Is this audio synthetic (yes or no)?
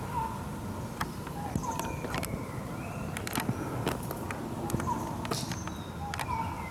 no